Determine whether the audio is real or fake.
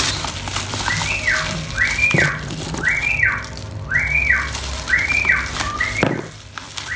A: real